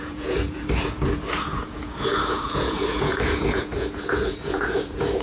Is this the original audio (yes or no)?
no